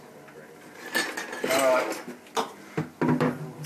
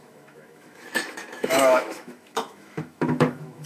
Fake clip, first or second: second